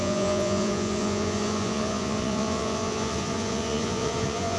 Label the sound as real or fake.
fake